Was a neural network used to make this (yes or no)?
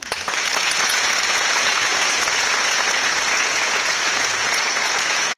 yes